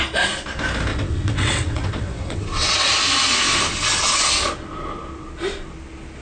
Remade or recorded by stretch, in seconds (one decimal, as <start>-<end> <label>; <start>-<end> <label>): 0.0-0.9 recorded; 0.9-2.9 remade; 2.9-6.2 recorded